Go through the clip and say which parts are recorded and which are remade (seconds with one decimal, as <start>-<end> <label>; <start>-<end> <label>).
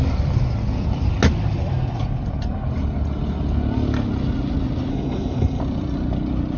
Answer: 0.0-4.9 recorded; 4.9-5.6 remade; 5.6-6.6 recorded